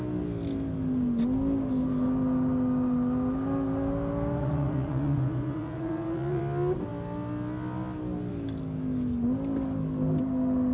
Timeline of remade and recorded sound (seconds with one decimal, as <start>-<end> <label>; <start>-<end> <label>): 0.0-4.4 recorded; 4.4-6.4 remade; 6.4-10.7 recorded